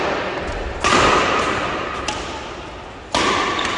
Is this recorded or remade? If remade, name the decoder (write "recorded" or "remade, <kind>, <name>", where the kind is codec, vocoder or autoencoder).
recorded